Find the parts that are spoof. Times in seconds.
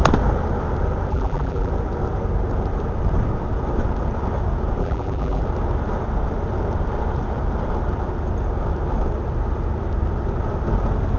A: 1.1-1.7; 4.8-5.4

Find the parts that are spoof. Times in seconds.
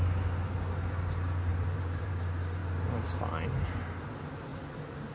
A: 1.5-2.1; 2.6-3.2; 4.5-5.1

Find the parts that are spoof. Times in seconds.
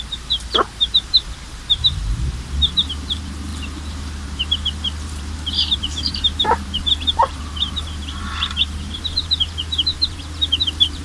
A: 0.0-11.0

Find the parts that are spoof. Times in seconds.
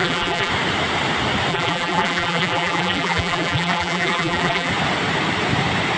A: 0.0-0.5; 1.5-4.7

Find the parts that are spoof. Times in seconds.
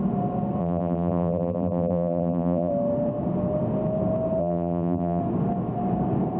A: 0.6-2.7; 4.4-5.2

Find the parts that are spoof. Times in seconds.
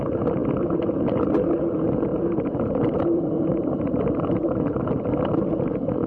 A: 2.1-5.0